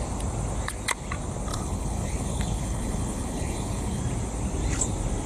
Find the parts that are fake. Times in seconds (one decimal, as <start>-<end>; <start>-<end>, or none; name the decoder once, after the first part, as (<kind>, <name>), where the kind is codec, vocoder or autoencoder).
1.5-4.0 (codec, HILCodec)